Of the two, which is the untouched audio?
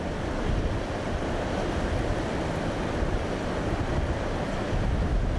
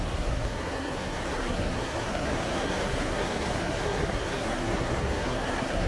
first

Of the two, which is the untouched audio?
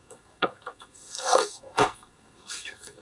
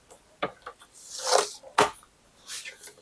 second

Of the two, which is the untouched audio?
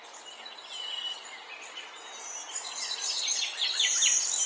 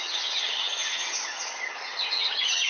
first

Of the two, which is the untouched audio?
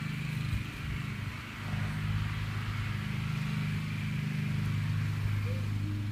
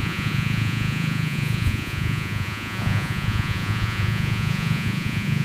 first